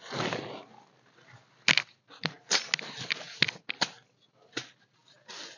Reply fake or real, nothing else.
real